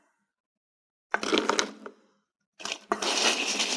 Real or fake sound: real